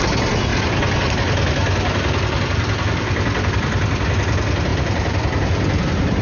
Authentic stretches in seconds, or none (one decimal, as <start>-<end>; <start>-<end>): 0.0-1.6; 2.2-4.7